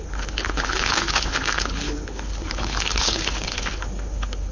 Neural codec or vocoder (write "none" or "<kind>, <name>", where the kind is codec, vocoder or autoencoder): codec, HILCodec